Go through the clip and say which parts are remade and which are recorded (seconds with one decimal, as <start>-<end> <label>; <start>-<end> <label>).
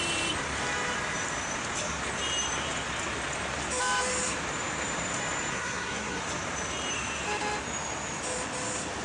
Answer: 0.0-5.5 recorded; 5.5-6.2 remade; 6.2-9.0 recorded